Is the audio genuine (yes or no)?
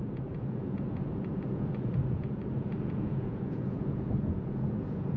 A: no